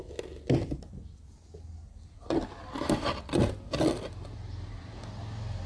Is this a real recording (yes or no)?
yes